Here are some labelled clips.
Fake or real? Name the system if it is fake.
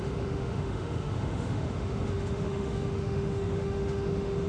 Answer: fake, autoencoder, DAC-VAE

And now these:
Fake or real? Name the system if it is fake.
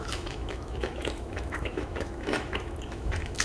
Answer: fake, autoencoder, DAC-VAE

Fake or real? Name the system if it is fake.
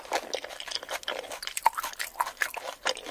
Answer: real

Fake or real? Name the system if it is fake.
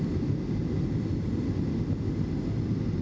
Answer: real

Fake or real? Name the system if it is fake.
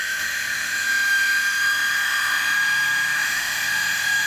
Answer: fake, autoencoder, DAC-VAE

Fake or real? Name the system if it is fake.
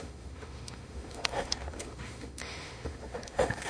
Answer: fake, autoencoder, DAC-VAE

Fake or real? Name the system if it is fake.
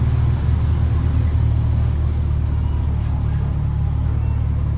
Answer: real